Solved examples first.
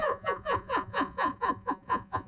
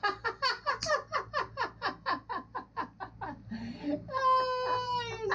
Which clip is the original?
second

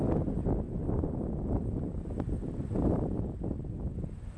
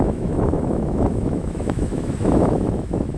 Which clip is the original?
first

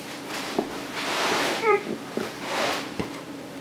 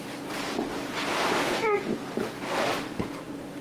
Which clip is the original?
second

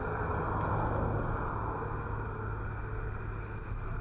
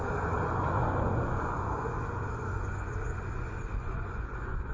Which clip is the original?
first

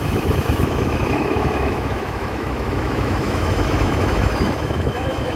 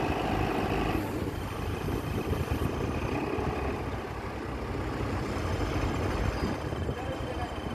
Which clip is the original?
second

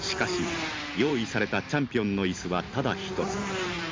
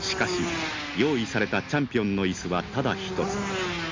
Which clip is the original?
second